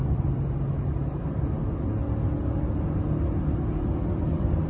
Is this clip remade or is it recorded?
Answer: recorded